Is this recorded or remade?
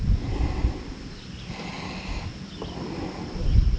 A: recorded